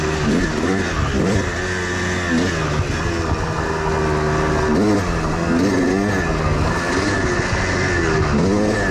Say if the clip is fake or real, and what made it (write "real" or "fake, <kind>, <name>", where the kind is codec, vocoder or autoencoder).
real